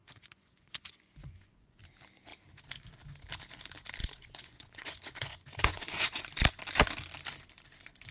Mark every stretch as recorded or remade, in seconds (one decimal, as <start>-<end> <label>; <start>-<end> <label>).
0.0-1.8 remade; 1.8-4.0 recorded; 4.0-6.2 remade; 6.2-8.1 recorded